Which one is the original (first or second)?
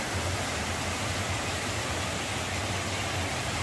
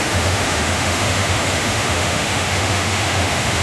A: first